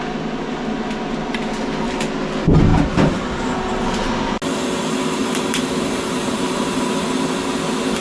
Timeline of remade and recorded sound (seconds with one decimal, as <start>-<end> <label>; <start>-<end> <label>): 0.0-5.2 recorded; 5.2-6.9 remade; 6.9-8.0 recorded